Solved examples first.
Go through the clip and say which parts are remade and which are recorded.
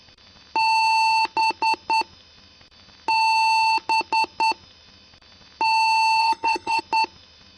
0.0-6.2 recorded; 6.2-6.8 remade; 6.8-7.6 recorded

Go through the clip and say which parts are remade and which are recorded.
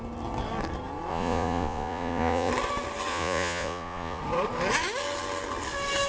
0.0-1.1 recorded; 1.1-2.5 remade; 2.5-3.1 recorded; 3.1-4.2 remade; 4.2-6.1 recorded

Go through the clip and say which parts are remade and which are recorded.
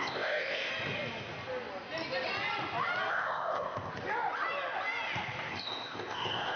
0.0-0.7 remade; 0.7-3.1 recorded; 3.1-3.9 remade; 3.9-5.5 recorded; 5.5-6.6 remade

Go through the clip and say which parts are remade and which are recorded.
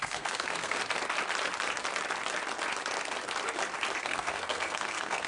0.0-0.8 remade; 0.8-4.0 recorded; 4.0-5.3 remade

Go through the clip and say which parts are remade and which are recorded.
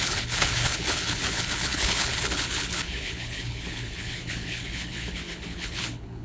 0.0-6.2 remade